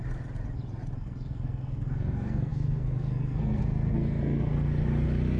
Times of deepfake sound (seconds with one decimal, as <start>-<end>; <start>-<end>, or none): 1.0-4.5